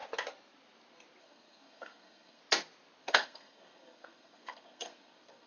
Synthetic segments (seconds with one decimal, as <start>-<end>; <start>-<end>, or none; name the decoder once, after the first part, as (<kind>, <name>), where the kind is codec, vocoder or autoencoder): 1.2-2.4 (codec, SNAC); 3.0-5.5